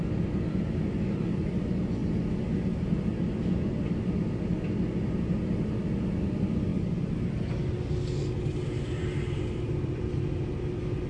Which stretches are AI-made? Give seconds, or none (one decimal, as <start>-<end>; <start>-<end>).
none